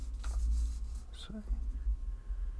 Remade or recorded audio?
recorded